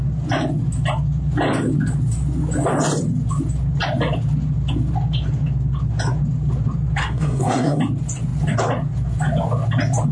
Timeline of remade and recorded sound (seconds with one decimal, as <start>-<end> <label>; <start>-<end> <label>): 0.0-7.0 recorded; 7.0-7.8 remade; 7.8-10.1 recorded